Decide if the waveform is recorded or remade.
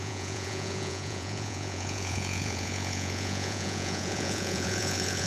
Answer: remade